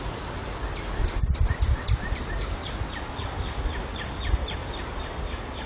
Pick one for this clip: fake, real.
real